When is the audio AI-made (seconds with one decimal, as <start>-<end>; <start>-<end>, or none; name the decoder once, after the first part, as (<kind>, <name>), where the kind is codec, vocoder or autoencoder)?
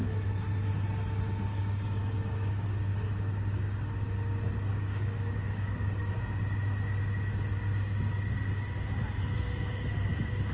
1.5-2.9 (codec, DAC); 4.7-6.1